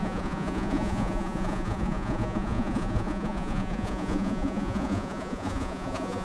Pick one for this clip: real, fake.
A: fake